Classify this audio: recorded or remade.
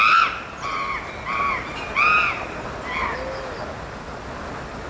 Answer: recorded